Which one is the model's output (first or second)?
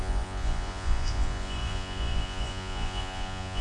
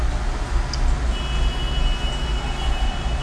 first